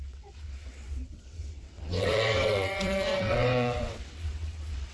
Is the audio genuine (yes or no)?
no